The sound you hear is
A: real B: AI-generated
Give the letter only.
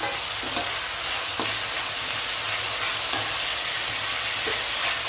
A